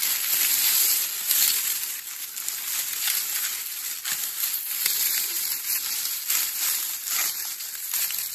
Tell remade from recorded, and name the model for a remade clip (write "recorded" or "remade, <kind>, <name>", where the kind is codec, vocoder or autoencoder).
recorded